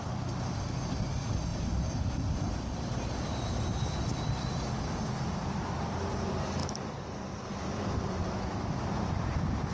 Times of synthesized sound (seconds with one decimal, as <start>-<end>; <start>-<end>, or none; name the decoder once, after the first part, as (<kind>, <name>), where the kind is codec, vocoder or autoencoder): none

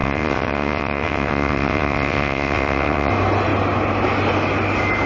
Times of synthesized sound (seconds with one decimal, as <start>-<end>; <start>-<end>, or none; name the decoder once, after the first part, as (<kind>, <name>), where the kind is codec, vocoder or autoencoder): 0.0-3.1 (vocoder, WaveNeXt)

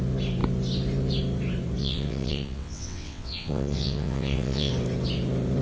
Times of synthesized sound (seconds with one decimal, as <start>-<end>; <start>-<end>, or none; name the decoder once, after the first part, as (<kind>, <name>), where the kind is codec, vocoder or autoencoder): 1.8-4.7 (vocoder, WaveNeXt)

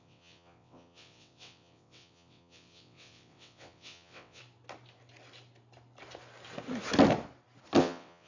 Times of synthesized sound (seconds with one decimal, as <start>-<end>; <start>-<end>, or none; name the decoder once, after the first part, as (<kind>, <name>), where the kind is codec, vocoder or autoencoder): 0.0-4.4 (vocoder, WaveNeXt); 7.8-8.3

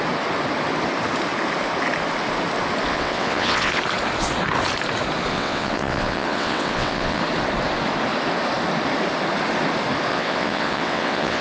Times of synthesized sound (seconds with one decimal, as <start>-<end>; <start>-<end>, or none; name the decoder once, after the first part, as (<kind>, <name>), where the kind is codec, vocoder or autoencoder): 2.9-3.8 (vocoder, WaveNeXt); 5.3-7.2; 10.1-11.4

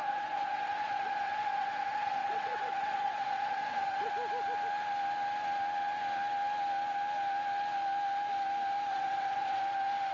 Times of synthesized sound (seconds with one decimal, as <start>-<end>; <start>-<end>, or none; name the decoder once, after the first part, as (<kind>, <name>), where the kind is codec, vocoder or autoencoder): 0.0-4.1 (vocoder, WaveNeXt); 8.9-9.6

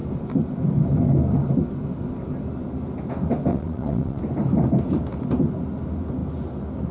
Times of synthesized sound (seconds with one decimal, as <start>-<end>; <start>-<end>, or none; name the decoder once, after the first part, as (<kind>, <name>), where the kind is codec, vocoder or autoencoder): 3.5-4.2 (vocoder, WaveNeXt)

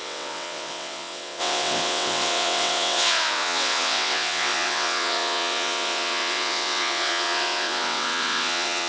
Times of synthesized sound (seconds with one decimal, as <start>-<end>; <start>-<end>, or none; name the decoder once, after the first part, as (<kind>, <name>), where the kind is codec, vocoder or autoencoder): 0.0-8.9 (vocoder, WaveNeXt)